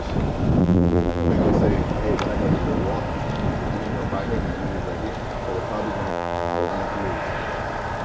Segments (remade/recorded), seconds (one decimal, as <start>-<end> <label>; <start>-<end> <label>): 0.0-0.6 recorded; 0.6-1.3 remade; 1.3-6.1 recorded; 6.1-6.7 remade; 6.7-8.0 recorded